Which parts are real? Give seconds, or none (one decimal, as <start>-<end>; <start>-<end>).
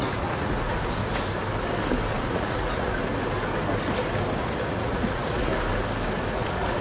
1.0-2.1; 3.0-4.4; 5.5-6.3